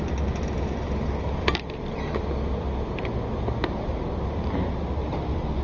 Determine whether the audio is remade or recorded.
recorded